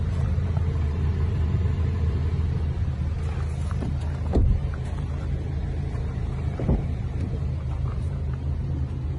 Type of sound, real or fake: fake